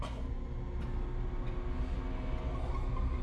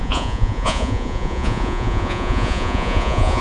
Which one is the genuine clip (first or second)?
first